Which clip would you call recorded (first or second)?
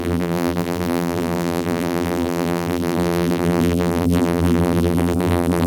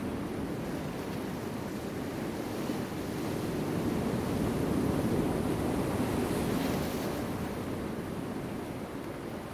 second